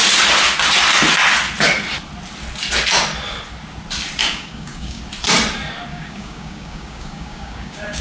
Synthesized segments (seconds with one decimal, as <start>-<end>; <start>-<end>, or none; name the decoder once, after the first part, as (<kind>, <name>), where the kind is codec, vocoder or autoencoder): 4.2-5.0 (codec, DAC); 5.9-8.0